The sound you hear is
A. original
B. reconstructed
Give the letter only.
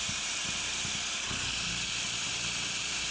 A